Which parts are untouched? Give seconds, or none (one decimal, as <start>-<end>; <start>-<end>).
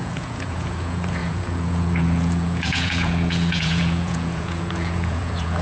none